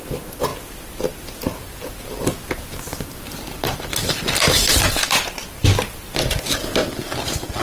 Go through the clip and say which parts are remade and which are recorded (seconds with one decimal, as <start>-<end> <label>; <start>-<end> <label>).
0.0-2.9 recorded; 2.9-5.0 remade; 5.0-6.8 recorded; 6.8-7.6 remade